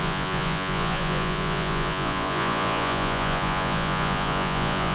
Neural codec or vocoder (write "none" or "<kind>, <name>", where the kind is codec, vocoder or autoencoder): vocoder, Vocos